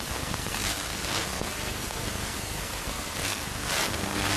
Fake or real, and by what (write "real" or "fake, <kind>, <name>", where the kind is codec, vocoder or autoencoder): fake, codec, SNAC